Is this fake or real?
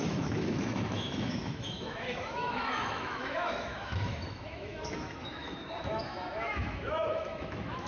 fake